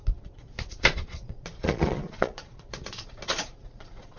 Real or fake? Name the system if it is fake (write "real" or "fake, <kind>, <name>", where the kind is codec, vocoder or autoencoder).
fake, vocoder, Vocos